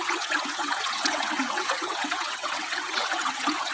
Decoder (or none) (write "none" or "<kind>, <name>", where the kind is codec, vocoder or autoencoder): vocoder, WaveNeXt